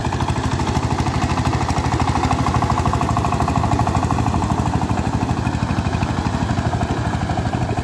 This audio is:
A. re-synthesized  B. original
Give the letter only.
B